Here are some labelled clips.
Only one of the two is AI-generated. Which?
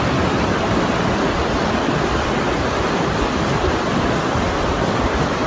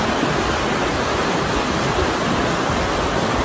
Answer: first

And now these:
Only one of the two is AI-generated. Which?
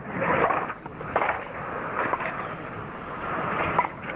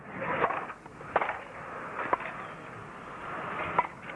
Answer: first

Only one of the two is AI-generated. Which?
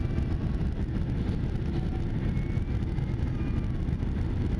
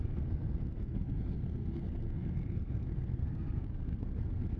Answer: second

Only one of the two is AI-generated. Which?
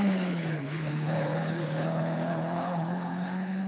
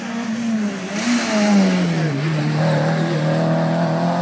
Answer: first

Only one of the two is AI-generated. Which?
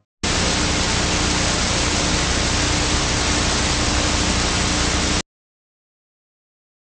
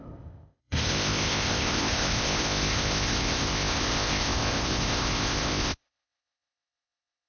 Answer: second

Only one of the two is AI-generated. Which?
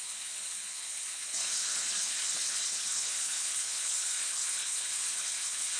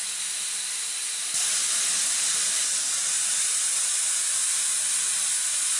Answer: first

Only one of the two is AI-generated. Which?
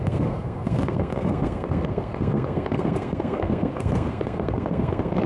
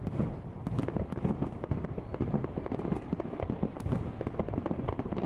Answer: first